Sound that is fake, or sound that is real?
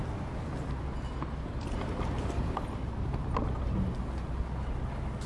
real